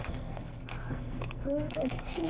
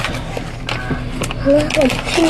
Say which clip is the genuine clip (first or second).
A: second